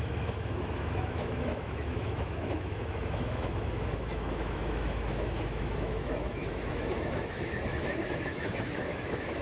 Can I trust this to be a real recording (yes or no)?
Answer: no